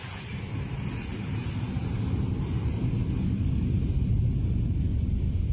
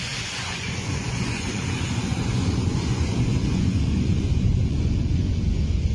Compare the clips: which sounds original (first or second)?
first